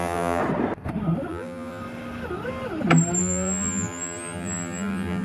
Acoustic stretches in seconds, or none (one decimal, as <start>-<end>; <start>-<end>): 0.4-1.3; 1.8-3.2